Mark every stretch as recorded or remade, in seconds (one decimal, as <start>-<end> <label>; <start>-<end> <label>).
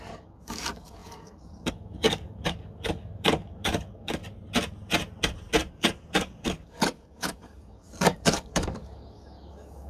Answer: 0.0-4.2 remade; 4.2-5.7 recorded; 5.7-9.9 remade